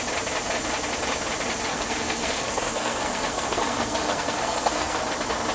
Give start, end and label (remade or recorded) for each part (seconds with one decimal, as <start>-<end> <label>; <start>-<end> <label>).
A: 0.0-1.7 recorded; 1.7-5.0 remade; 5.0-5.5 recorded

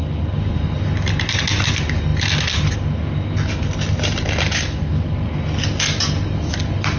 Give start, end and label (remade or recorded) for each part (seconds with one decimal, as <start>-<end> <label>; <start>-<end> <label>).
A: 0.0-7.0 recorded

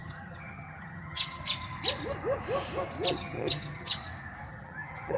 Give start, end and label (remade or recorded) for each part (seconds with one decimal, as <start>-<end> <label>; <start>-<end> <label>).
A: 0.0-1.4 remade; 1.4-3.1 recorded; 3.1-4.0 remade; 4.0-4.5 recorded; 4.5-5.2 remade

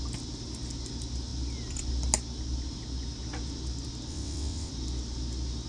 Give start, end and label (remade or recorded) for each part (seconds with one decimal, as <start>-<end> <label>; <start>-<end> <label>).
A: 0.0-4.1 recorded; 4.1-4.7 remade; 4.7-5.7 recorded

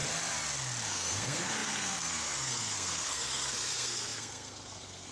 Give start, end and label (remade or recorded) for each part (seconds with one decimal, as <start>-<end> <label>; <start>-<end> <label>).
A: 0.0-0.9 recorded; 0.9-5.1 remade

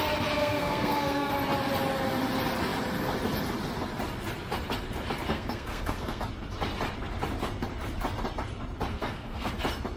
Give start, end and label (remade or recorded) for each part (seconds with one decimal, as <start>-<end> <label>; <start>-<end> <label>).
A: 0.0-0.4 recorded; 0.4-1.3 remade; 1.3-5.3 recorded; 5.3-6.2 remade; 6.2-8.9 recorded; 8.9-9.5 remade; 9.5-10.0 recorded